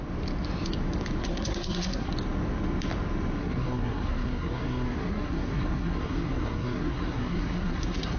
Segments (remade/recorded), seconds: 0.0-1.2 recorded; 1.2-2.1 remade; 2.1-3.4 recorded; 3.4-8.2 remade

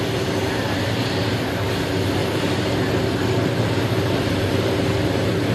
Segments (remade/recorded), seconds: 0.0-5.5 recorded

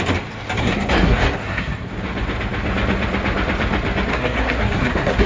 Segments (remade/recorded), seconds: 0.0-0.6 recorded; 0.6-1.9 remade; 1.9-4.1 recorded; 4.1-5.3 remade

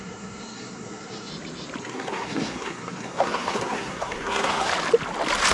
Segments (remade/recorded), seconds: 0.0-1.3 remade; 1.3-1.8 recorded; 1.8-4.7 remade; 4.7-5.5 recorded

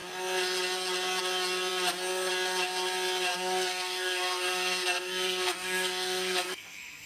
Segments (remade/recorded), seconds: 0.0-3.3 recorded; 3.3-7.1 remade

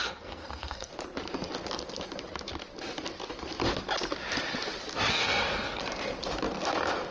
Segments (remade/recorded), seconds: 0.0-0.9 remade; 0.9-5.1 recorded; 5.1-5.8 remade; 5.8-7.1 recorded

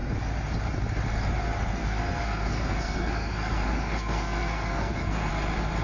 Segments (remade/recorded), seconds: 0.0-1.8 recorded; 1.8-5.3 remade; 5.3-5.8 recorded

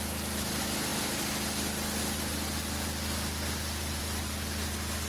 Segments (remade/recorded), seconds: 0.0-5.1 recorded